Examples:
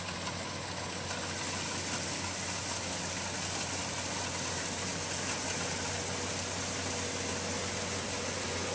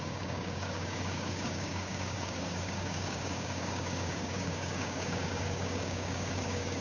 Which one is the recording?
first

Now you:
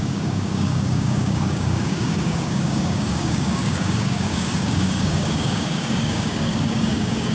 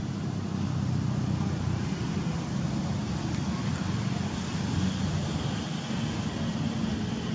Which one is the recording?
second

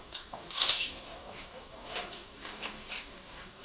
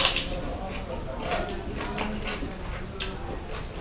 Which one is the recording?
second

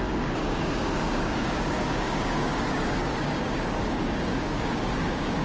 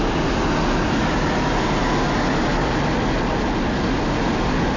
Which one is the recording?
second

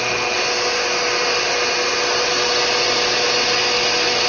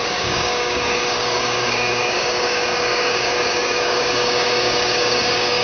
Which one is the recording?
first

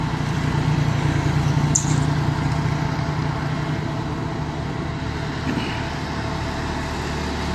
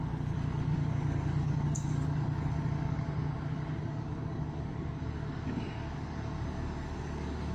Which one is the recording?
first